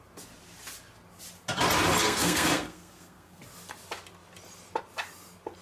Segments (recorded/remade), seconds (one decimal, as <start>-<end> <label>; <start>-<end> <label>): 0.0-2.0 recorded; 2.0-3.4 remade; 3.4-5.6 recorded